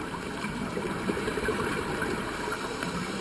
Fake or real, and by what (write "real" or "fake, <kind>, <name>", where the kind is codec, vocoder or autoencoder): fake, vocoder, BigVGAN v2